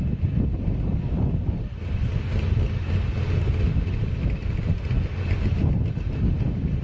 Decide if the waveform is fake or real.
real